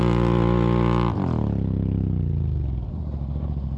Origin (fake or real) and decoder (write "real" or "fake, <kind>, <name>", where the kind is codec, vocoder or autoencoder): real